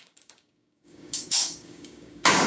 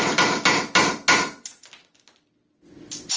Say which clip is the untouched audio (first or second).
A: second